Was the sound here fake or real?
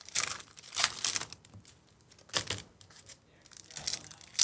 real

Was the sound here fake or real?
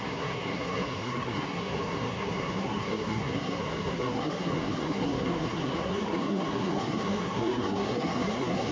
fake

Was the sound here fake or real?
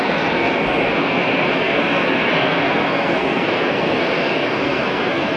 fake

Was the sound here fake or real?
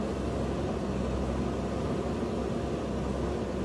real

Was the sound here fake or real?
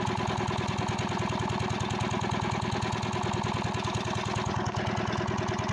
real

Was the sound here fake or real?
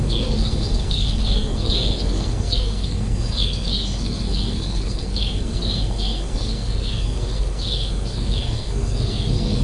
fake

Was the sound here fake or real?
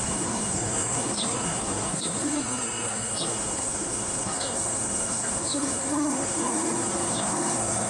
fake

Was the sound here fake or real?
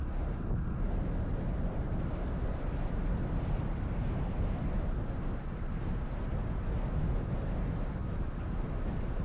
real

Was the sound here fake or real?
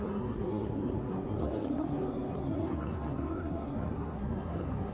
fake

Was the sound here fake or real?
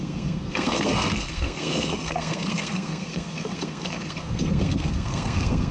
fake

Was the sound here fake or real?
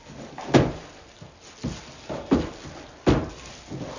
real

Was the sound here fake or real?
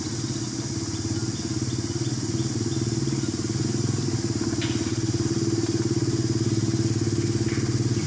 real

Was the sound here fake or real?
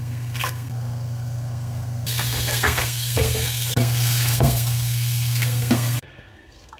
fake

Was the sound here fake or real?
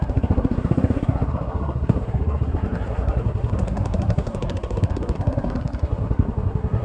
fake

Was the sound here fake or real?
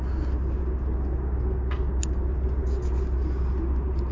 real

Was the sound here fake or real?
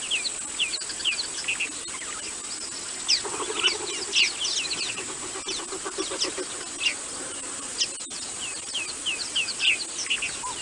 real